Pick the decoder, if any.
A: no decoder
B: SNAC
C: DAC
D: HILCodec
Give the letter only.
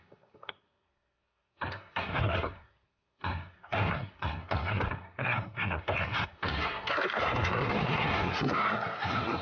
B